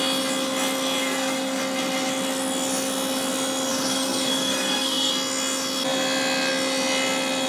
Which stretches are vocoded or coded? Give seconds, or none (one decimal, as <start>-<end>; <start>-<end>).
1.0-1.6; 3.7-5.1

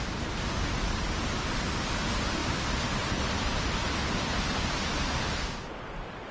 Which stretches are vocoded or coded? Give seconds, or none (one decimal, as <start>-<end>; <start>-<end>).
2.4-5.0

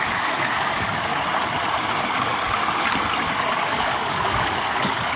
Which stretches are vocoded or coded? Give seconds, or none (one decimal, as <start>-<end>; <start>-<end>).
0.0-1.1; 2.0-2.6; 3.5-5.2

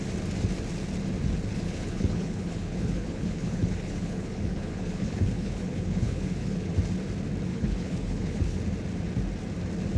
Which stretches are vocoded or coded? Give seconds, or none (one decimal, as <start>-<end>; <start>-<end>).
1.5-6.7; 7.5-8.6